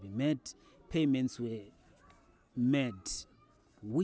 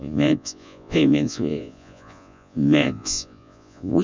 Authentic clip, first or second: first